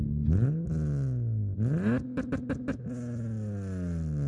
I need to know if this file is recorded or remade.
recorded